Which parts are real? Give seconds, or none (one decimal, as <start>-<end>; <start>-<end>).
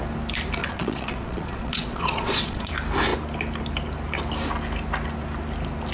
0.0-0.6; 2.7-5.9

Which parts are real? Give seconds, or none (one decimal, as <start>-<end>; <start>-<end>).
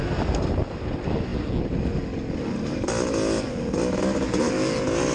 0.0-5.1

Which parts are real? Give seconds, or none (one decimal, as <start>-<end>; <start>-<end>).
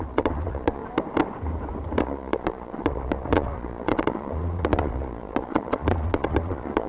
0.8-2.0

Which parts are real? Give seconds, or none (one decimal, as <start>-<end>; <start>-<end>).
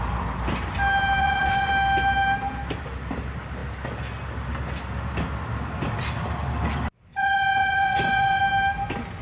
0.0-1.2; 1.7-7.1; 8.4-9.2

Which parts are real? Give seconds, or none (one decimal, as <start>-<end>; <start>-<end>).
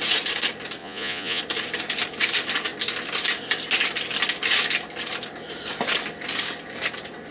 0.0-0.8; 1.4-7.3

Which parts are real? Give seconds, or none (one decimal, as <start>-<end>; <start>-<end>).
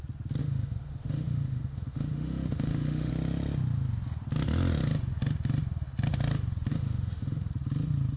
0.0-0.4; 3.1-6.7; 7.5-8.2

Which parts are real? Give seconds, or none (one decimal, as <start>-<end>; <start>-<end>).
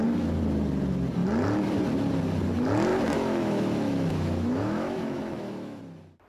0.0-2.9; 5.8-6.3